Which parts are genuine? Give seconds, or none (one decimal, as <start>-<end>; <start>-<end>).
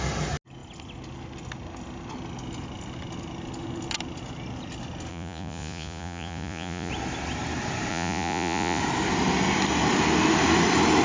0.0-5.1; 6.9-7.9; 8.8-11.0